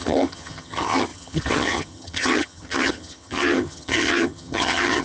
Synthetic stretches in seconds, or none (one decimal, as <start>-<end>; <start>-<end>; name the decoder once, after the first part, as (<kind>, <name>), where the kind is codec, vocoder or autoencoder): 0.0-5.0 (vocoder, HiFi-GAN)